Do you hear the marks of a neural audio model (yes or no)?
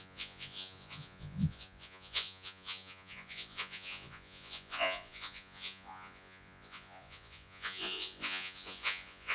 yes